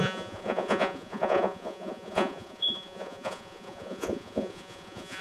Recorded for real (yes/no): no